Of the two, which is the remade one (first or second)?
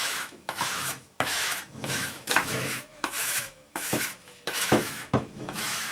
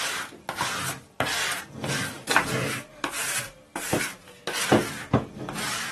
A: first